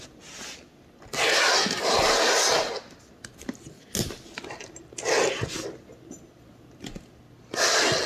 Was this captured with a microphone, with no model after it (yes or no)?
yes